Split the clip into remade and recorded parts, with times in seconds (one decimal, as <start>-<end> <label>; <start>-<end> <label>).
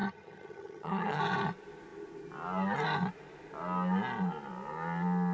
0.0-1.2 remade; 1.2-5.3 recorded